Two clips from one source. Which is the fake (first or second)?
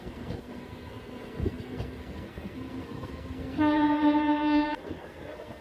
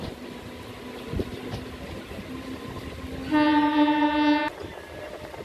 first